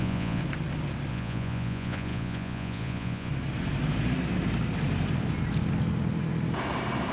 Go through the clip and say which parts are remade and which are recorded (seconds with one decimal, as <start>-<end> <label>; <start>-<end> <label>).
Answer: 0.0-0.4 remade; 0.4-1.1 recorded; 1.1-3.3 remade; 3.3-7.1 recorded